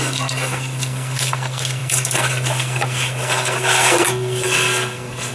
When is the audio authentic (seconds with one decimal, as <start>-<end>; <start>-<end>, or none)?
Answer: none